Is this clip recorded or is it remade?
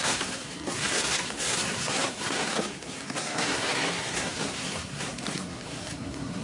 remade